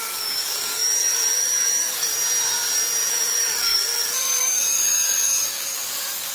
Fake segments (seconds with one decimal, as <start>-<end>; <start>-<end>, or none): 0.0-2.1; 3.1-6.3